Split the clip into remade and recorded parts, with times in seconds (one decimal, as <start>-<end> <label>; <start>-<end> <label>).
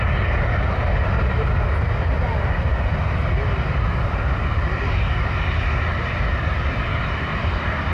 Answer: 0.0-7.9 recorded